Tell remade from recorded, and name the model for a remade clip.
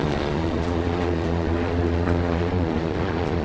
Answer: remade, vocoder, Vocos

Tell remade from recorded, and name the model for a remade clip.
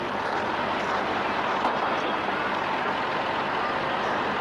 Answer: recorded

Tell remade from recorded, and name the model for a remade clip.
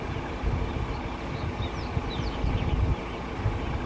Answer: recorded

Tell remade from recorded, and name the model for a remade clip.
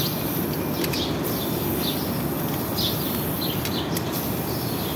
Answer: recorded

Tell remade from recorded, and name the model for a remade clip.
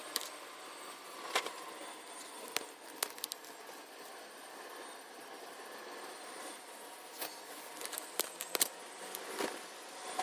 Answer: recorded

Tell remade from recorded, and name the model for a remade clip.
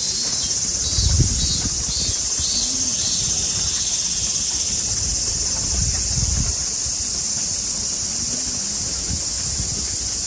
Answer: recorded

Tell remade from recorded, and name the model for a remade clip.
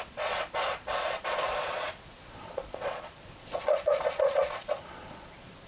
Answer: remade, vocoder, Vocos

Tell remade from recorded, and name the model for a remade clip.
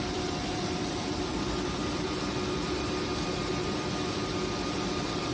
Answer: remade, vocoder, BigVGAN v2